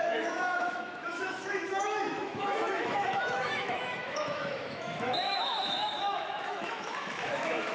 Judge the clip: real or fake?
fake